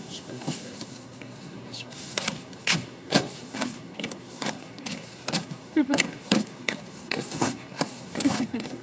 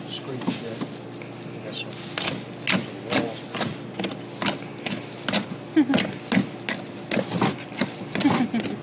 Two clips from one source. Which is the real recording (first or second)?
second